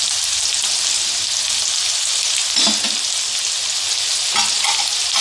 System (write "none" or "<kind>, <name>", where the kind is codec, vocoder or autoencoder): none